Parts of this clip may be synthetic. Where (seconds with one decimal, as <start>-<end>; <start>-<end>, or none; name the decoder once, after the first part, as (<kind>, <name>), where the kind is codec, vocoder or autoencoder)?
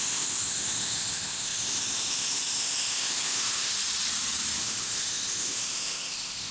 0.0-3.7 (codec, ZipCodec); 4.6-6.5